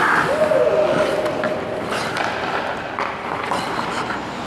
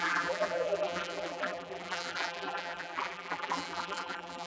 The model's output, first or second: second